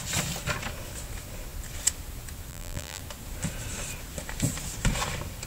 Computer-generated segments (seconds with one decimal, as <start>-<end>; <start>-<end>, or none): 2.5-3.0